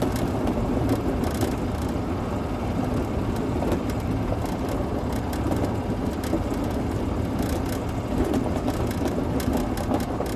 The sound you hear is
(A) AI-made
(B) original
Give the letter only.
B